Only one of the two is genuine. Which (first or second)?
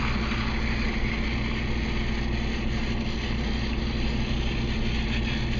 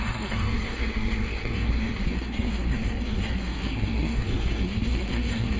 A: first